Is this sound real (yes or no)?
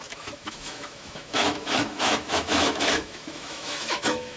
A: no